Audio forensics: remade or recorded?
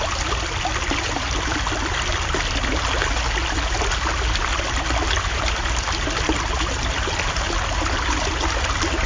recorded